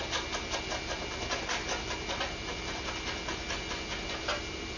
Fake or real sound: real